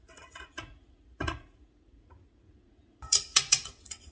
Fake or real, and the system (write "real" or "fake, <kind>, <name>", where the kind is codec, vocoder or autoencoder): fake, vocoder, Vocos